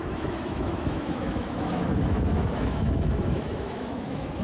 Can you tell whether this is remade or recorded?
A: remade